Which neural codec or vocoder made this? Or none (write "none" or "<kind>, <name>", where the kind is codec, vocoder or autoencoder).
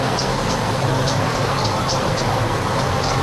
codec, SNAC